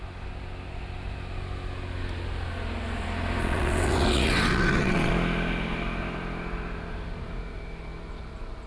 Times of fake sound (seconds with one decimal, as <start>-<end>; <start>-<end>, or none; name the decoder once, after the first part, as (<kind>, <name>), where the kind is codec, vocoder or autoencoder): 3.4-5.1 (vocoder, WaveNeXt)